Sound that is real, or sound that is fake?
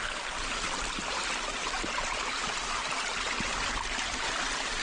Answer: real